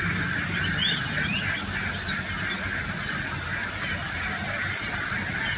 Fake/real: real